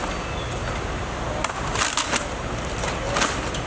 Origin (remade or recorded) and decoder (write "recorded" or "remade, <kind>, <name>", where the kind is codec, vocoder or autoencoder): recorded